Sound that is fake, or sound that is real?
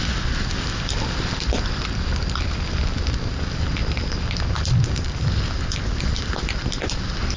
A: real